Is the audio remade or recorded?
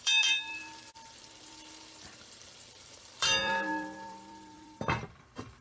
remade